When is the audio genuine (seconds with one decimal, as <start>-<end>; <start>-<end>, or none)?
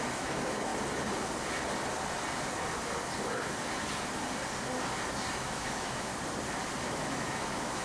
0.7-5.3; 6.1-6.8